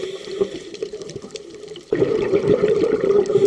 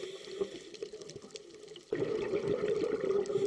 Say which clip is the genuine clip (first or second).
second